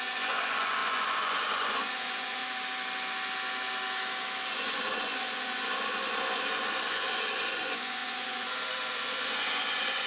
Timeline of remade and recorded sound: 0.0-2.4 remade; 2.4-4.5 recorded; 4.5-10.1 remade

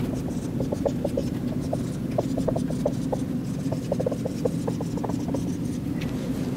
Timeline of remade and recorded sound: 0.0-6.6 recorded

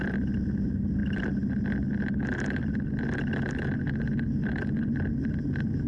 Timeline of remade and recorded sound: 0.0-5.9 recorded